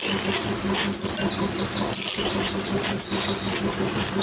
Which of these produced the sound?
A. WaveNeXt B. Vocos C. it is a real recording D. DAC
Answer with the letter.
C